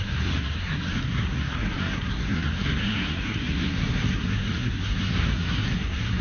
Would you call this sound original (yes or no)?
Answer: no